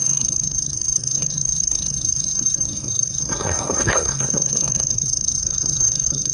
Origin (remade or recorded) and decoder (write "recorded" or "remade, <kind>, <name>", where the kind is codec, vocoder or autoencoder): remade, codec, SNAC